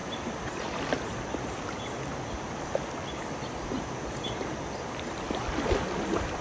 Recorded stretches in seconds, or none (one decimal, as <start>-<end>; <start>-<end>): 0.0-6.4